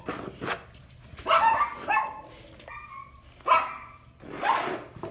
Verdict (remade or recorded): recorded